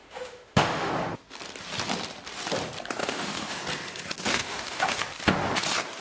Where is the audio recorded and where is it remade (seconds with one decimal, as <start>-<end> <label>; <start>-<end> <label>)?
0.0-0.9 remade; 0.9-3.0 recorded; 3.0-3.6 remade; 3.6-4.3 recorded; 4.3-4.9 remade; 4.9-6.0 recorded